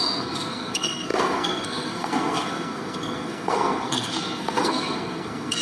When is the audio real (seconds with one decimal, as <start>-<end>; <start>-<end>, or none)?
none